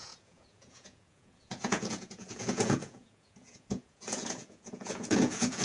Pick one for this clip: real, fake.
fake